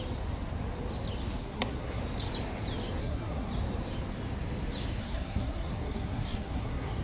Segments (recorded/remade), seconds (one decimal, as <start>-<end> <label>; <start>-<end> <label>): 0.0-1.4 recorded; 1.4-2.0 remade; 2.0-3.0 recorded; 3.0-3.5 remade; 3.5-5.0 recorded; 5.0-7.0 remade